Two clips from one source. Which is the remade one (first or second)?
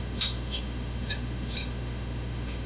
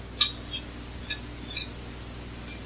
first